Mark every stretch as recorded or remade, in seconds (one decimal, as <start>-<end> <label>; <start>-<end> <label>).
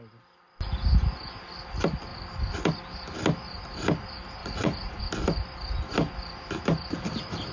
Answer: 0.0-4.4 recorded; 4.4-5.0 remade; 5.0-7.5 recorded